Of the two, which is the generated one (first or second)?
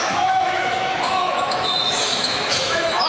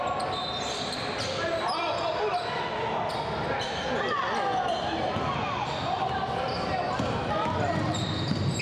first